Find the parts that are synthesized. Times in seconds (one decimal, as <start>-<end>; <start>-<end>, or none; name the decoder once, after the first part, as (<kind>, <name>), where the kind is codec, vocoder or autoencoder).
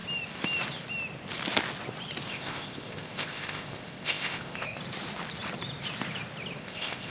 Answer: 2.3-4.8 (codec, ZipCodec); 6.6-7.1